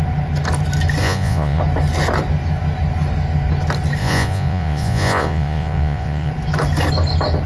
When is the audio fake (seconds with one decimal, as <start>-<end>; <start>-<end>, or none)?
1.0-1.6; 4.0-6.3